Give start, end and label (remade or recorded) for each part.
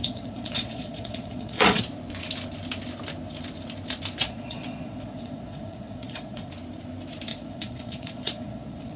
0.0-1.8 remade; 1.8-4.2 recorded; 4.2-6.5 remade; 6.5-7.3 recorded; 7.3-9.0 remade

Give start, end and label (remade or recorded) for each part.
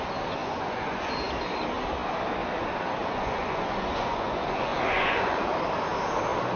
0.0-0.4 recorded; 0.4-1.1 remade; 1.1-3.0 recorded; 3.0-5.4 remade; 5.4-6.6 recorded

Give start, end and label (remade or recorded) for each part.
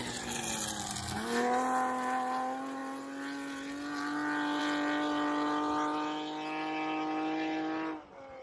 0.0-8.4 recorded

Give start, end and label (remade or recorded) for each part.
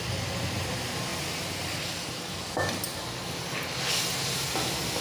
0.0-5.0 recorded